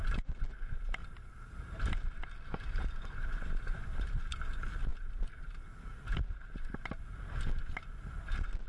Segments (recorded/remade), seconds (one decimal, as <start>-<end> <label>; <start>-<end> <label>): 0.0-1.0 recorded; 1.0-4.2 remade; 4.2-4.9 recorded; 4.9-5.5 remade; 5.5-8.7 recorded